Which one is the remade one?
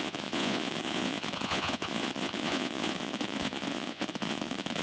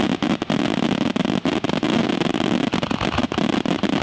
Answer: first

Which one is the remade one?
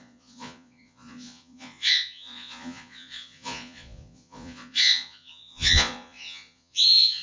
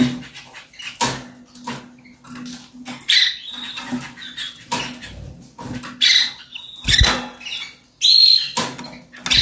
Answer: first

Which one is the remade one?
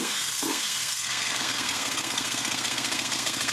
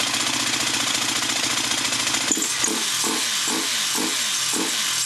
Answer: first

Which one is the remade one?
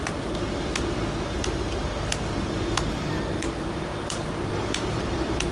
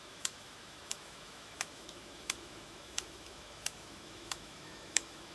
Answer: second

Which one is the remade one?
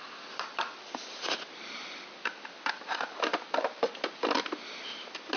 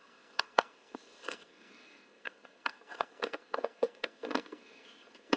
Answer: second